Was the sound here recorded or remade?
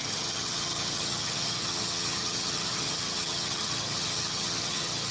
remade